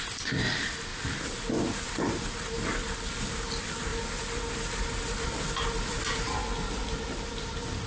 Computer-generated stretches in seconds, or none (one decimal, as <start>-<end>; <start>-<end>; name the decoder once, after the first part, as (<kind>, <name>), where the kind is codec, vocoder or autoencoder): none